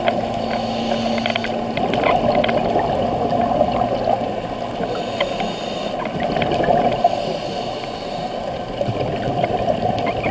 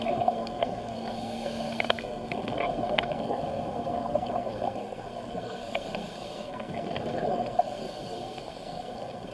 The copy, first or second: second